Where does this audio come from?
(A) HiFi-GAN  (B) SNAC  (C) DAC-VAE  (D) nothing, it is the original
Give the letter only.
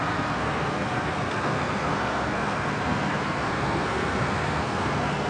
B